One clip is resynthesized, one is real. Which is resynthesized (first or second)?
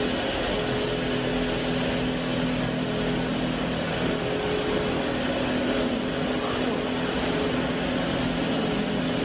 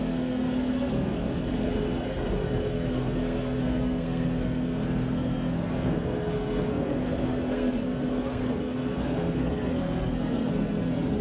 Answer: second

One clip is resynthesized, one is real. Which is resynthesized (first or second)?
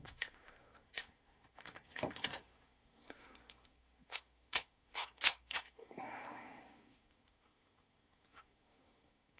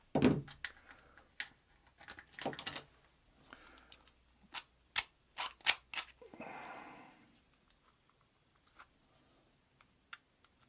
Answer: first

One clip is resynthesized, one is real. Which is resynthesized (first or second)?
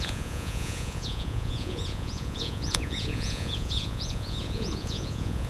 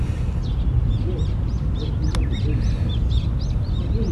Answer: first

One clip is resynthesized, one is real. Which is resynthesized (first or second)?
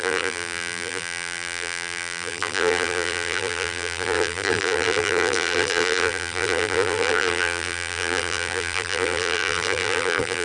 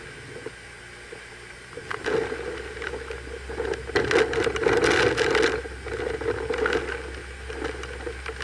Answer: first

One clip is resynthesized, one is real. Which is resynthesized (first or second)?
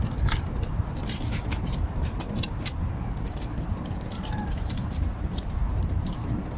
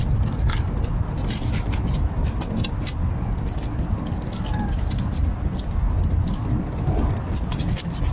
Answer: first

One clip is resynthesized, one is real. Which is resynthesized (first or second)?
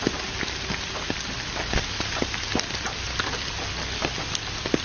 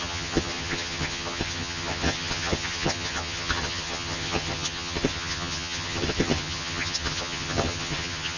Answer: second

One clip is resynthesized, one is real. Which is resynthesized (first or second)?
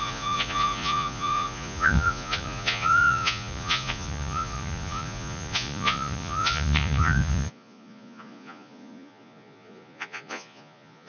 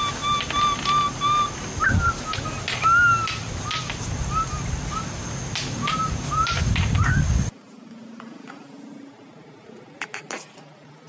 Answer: first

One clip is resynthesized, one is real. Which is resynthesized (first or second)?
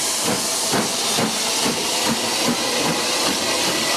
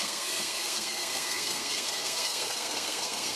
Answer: second